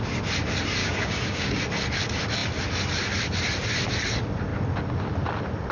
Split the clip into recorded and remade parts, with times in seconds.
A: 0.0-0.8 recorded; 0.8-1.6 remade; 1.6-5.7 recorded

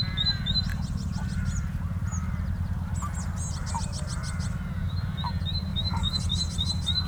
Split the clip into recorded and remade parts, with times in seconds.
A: 0.0-5.7 recorded; 5.7-6.2 remade; 6.2-7.1 recorded

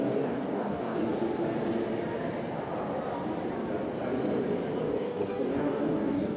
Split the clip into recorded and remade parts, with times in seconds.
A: 0.0-1.0 remade; 1.0-4.8 recorded; 4.8-6.4 remade

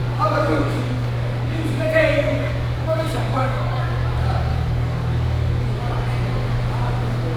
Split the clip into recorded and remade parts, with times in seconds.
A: 0.0-3.8 remade; 3.8-4.5 recorded; 4.5-5.8 remade; 5.8-7.4 recorded

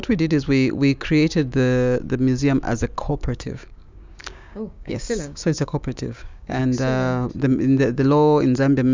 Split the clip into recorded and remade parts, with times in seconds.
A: 0.0-3.1 recorded; 3.1-6.6 remade; 6.6-8.9 recorded

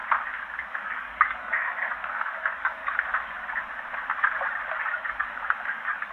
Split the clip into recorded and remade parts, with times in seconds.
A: 0.0-0.6 recorded; 0.6-2.8 remade; 2.8-4.7 recorded; 4.7-6.1 remade

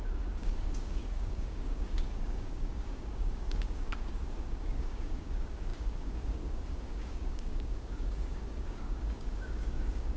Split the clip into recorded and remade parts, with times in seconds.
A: 0.0-10.2 remade

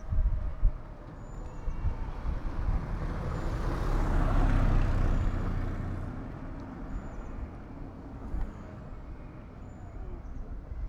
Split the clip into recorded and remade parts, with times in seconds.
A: 0.0-8.2 recorded; 8.2-8.8 remade; 8.8-10.9 recorded